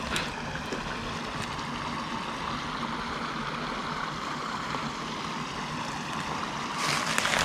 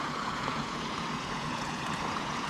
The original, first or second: first